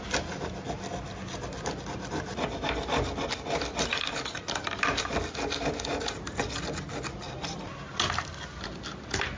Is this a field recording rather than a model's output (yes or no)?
yes